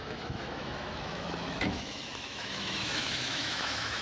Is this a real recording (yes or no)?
no